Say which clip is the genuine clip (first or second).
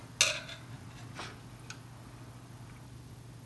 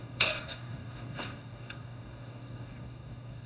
first